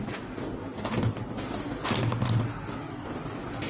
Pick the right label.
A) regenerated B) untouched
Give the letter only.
B